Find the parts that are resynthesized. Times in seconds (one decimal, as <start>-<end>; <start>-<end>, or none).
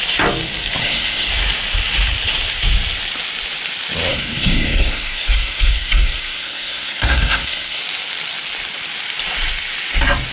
0.8-1.3; 4.1-7.8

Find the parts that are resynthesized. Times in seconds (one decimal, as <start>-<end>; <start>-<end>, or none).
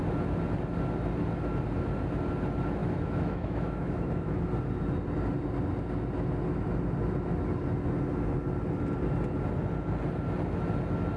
2.8-4.5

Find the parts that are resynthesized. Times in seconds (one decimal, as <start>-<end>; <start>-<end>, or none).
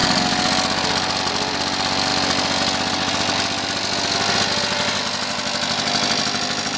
none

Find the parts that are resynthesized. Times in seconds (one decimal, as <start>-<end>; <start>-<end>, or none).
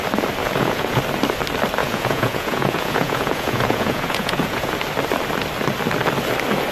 0.4-1.0; 1.8-4.7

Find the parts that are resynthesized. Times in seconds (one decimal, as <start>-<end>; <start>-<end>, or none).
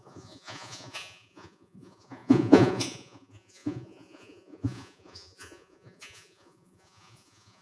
0.0-7.6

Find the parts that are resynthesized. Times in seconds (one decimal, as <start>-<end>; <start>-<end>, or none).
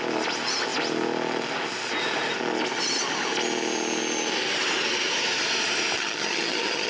6.0-6.9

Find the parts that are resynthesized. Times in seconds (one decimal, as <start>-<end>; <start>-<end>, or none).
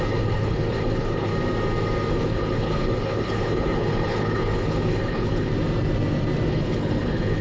0.0-1.3; 2.1-5.5; 6.5-7.4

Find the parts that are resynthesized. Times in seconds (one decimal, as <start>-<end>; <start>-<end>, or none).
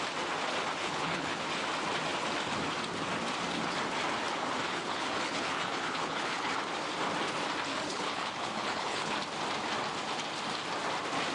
0.8-1.4; 4.7-6.5; 7.7-9.2